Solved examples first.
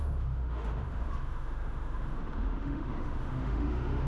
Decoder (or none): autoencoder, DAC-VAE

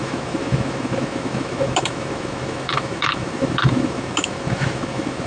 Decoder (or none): autoencoder, DAC-VAE